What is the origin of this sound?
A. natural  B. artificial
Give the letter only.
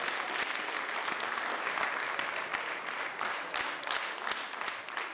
A